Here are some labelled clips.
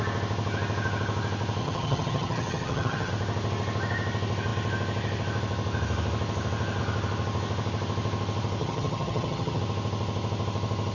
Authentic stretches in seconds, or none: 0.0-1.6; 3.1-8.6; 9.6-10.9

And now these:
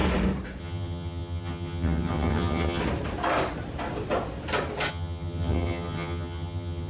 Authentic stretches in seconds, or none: 0.0-0.6; 2.8-4.9

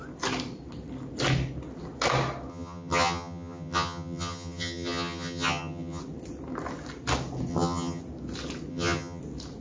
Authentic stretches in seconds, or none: 0.0-2.5; 6.0-7.5; 8.0-8.7; 9.2-9.6

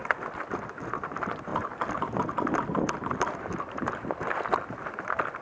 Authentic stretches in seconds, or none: 0.0-5.4

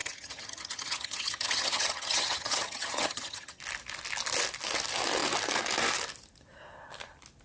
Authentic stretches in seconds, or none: 3.6-7.4

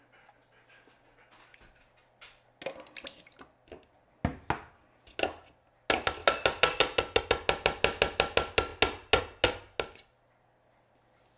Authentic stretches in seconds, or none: 0.0-11.4